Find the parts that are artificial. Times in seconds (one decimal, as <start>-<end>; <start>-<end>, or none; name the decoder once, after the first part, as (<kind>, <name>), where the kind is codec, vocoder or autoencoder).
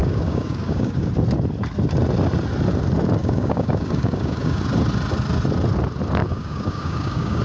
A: 0.0-1.1 (codec, DAC); 3.2-4.6; 6.2-7.4